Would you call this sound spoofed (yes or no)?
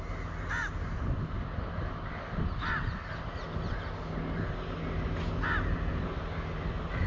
no